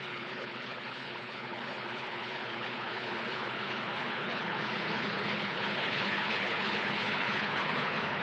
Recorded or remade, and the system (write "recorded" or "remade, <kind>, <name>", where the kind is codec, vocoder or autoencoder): remade, codec, HILCodec